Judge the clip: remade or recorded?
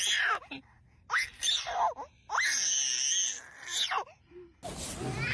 recorded